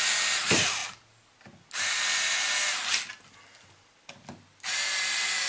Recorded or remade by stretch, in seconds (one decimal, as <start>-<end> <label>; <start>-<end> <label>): 0.0-0.8 remade; 0.8-4.1 recorded; 4.1-5.5 remade